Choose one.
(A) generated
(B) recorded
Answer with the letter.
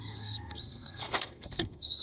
A